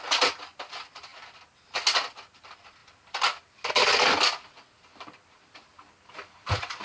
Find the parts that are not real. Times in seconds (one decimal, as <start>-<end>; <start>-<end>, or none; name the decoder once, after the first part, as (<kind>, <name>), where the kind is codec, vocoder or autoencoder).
none